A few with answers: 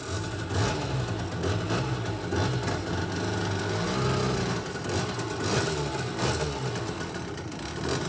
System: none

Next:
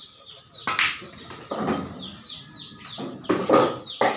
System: none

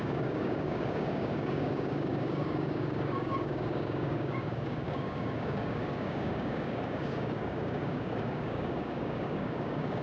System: codec, DAC